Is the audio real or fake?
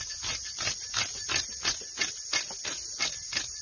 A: real